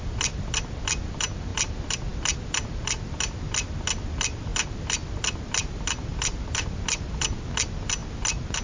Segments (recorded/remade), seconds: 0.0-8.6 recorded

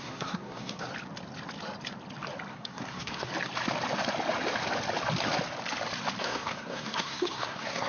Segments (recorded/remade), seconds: 0.0-0.9 remade; 0.9-2.5 recorded; 2.5-3.3 remade; 3.3-6.2 recorded; 6.2-7.9 remade

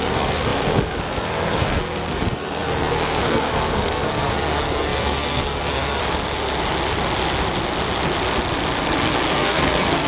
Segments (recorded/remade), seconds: 0.0-6.0 remade; 6.0-9.3 recorded; 9.3-10.1 remade

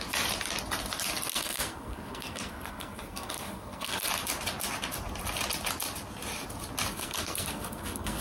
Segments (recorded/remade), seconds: 0.0-1.3 recorded; 1.3-4.1 remade; 4.1-6.9 recorded; 6.9-8.2 remade